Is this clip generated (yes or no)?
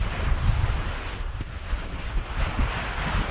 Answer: no